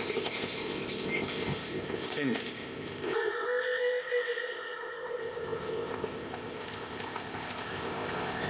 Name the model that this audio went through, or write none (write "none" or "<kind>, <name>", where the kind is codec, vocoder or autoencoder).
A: codec, ZipCodec